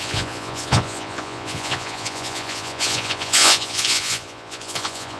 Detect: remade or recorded remade